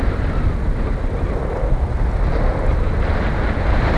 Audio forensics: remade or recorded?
recorded